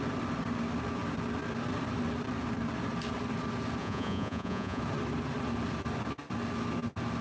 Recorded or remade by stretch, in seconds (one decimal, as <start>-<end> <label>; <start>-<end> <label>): 0.0-3.8 recorded; 3.8-4.8 remade; 4.8-7.2 recorded